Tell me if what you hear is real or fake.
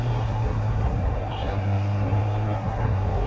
fake